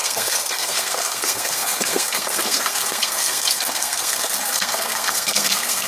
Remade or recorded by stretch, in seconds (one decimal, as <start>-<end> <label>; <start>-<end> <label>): 0.0-5.9 remade